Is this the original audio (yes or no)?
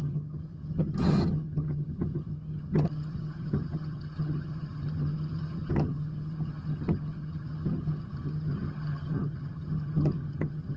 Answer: no